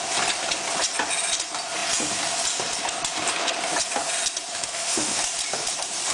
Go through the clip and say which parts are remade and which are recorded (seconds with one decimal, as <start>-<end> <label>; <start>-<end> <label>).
0.0-4.5 recorded; 4.5-5.2 remade; 5.2-6.1 recorded